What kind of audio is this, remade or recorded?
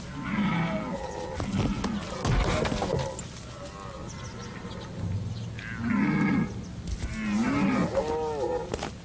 recorded